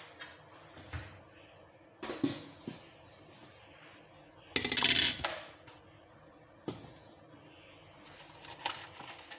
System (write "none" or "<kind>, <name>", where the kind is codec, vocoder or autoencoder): none